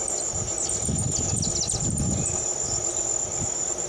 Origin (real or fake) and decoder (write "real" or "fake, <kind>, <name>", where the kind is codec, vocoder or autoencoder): real